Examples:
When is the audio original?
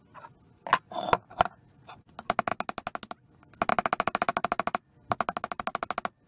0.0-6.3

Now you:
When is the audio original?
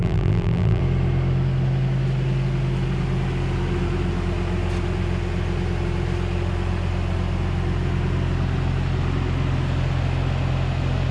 0.8-11.1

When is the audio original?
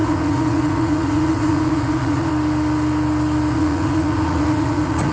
2.3-3.5